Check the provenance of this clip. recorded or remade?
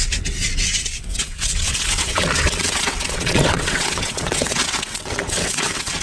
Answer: remade